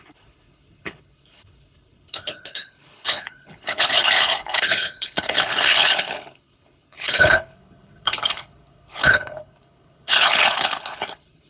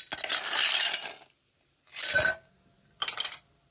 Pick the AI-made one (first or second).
first